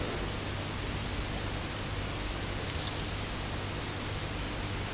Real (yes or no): yes